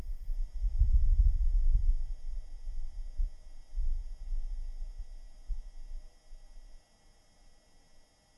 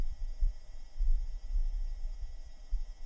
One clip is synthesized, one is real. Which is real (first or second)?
first